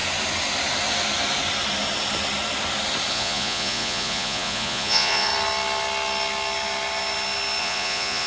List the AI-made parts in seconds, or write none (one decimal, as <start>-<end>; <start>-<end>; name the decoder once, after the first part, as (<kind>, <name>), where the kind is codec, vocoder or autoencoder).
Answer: 3.1-5.3 (vocoder, Vocos); 7.6-8.3